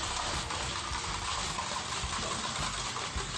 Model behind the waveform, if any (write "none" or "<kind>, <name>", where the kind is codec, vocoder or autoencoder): none